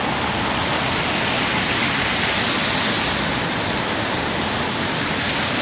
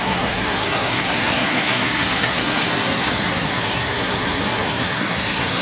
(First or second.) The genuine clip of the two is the first